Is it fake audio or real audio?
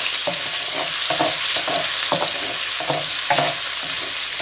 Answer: real